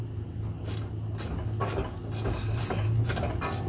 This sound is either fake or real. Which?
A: real